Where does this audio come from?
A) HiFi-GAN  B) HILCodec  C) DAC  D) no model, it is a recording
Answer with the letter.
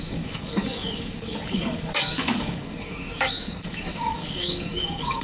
C